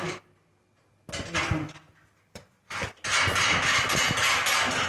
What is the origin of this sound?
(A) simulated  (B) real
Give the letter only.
B